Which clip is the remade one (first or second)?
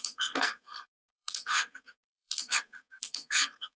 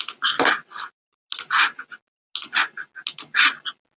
first